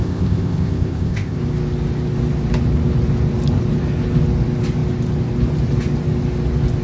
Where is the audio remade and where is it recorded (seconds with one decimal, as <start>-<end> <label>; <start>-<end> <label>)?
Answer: 0.0-1.4 remade; 1.4-6.8 recorded

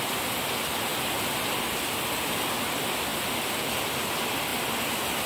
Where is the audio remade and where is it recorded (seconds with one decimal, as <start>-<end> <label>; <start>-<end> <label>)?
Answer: 0.0-5.3 recorded

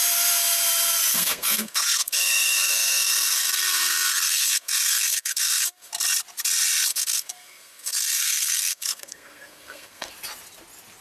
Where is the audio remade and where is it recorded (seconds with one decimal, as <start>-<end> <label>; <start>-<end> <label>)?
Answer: 0.0-1.1 recorded; 1.1-5.9 remade; 5.9-6.9 recorded; 6.9-10.1 remade; 10.1-11.0 recorded